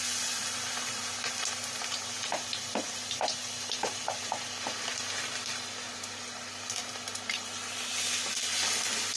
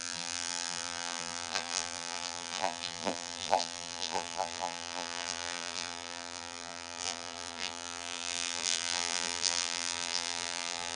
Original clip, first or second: first